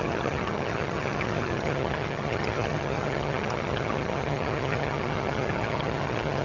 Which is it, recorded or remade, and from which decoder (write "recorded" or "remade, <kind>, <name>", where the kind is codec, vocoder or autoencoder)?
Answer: remade, vocoder, HiFi-GAN